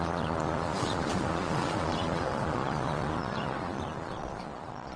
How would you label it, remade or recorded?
remade